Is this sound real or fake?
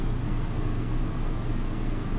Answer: fake